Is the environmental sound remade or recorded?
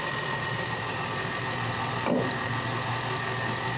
recorded